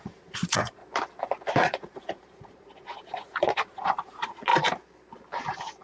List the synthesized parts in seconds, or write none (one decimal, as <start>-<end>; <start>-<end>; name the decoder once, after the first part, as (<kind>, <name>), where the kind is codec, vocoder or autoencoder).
0.0-0.8 (vocoder, Vocos); 1.6-4.5